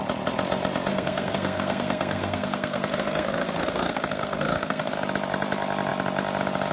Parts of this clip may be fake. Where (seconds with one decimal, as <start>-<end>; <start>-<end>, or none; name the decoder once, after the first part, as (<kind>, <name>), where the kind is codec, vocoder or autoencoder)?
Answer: 0.9-4.9 (codec, SNAC)